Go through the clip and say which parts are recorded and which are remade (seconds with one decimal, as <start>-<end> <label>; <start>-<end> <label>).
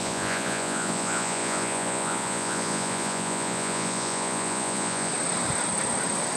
0.0-5.1 remade; 5.1-6.4 recorded